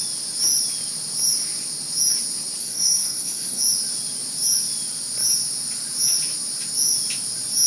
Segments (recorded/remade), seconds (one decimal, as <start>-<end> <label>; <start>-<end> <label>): 0.0-2.6 recorded; 2.6-3.6 remade; 3.6-7.7 recorded